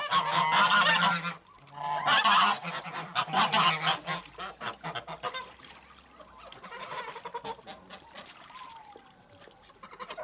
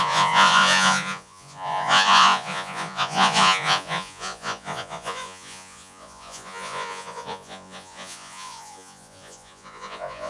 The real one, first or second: first